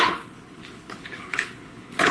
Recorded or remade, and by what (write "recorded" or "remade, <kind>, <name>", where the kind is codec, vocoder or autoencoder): remade, codec, HILCodec